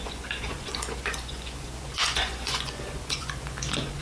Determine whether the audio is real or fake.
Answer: fake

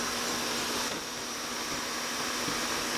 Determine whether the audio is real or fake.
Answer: real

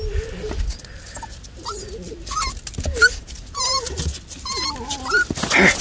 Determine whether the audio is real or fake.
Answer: real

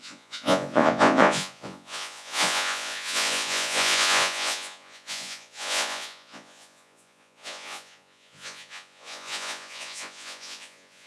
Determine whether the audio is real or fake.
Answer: fake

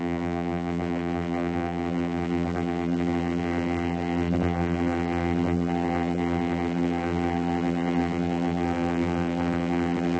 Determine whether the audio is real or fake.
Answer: fake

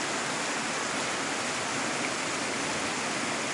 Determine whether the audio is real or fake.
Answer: real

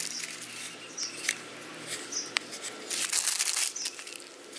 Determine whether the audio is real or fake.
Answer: real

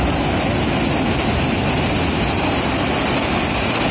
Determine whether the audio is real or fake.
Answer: real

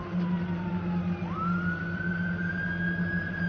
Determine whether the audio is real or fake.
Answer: real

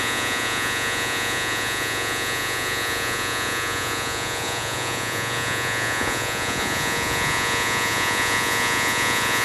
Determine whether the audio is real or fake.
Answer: fake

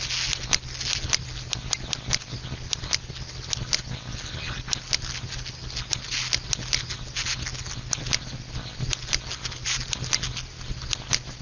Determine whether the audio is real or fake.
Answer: real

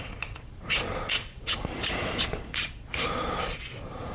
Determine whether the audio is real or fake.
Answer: fake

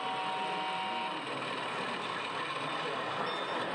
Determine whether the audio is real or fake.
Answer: real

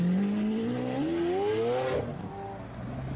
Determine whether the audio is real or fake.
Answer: real